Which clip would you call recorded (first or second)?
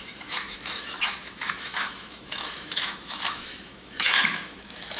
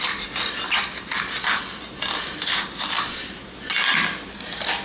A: second